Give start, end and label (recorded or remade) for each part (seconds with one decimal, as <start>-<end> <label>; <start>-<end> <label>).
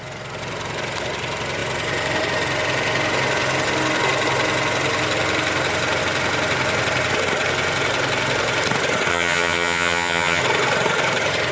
0.0-9.1 recorded; 9.1-10.4 remade; 10.4-11.5 recorded